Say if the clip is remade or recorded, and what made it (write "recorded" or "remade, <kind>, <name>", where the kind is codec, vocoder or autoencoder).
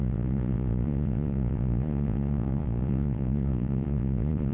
remade, vocoder, Vocos